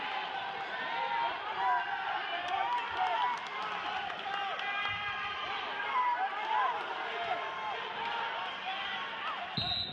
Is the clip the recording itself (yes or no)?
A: yes